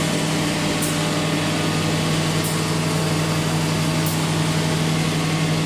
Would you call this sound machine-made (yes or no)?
no